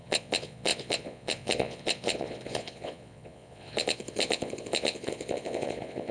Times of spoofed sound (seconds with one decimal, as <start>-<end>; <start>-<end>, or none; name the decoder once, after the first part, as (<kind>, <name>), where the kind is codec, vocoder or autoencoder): 0.0-6.1 (vocoder, Vocos)